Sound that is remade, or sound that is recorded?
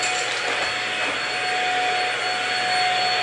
recorded